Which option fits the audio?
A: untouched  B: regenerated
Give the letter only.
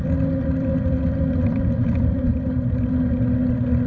A